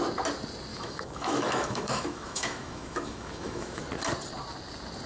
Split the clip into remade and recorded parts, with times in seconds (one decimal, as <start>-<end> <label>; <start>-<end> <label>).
0.0-0.7 recorded; 0.7-3.8 remade; 3.8-5.1 recorded